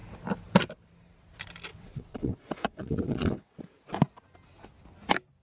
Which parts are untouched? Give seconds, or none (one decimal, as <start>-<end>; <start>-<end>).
0.0-1.7; 3.6-5.4